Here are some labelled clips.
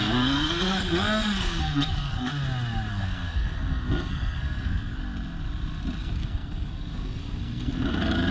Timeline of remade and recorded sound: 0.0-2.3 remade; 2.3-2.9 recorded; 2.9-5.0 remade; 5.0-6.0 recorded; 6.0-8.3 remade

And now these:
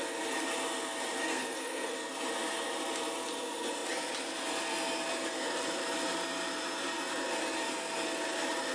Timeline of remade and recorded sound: 0.0-1.2 recorded; 1.2-1.9 remade; 1.9-8.7 recorded

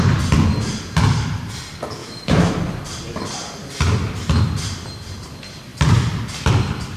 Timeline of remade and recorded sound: 0.0-2.0 recorded; 2.0-2.5 remade; 2.5-7.0 recorded

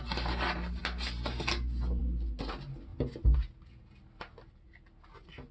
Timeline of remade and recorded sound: 0.0-5.5 recorded

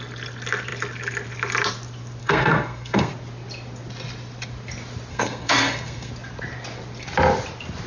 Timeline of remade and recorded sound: 0.0-2.2 recorded; 2.2-3.1 remade; 3.1-5.1 recorded; 5.1-6.1 remade; 6.1-7.9 recorded

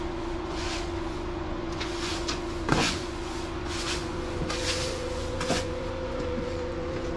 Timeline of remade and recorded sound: 0.0-7.2 remade

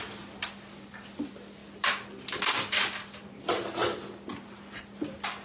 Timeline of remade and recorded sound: 0.0-5.4 recorded